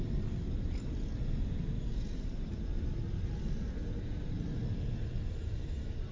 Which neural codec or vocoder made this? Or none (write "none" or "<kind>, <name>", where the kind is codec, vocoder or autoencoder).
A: none